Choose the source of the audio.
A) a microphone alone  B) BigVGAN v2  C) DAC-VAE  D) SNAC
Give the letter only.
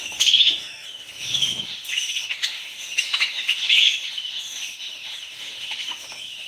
C